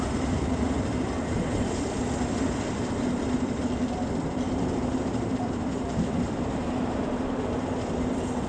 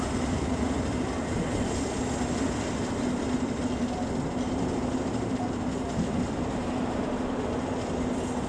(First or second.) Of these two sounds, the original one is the second